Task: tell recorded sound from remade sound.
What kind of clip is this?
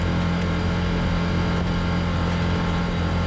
recorded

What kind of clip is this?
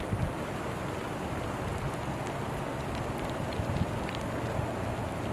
recorded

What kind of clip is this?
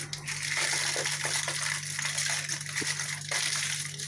recorded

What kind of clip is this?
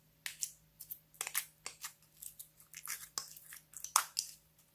recorded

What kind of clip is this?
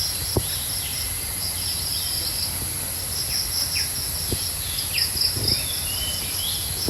recorded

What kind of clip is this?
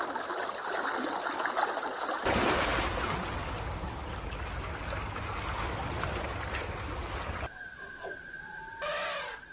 recorded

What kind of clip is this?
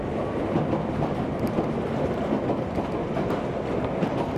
recorded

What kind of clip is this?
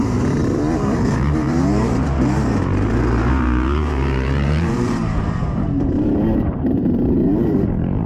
remade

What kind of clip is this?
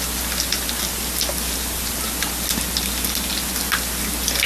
recorded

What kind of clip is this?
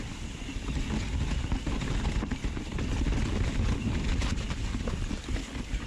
recorded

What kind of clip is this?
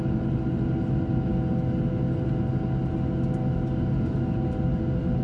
recorded